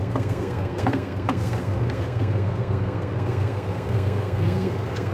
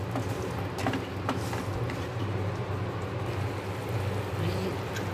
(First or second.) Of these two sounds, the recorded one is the second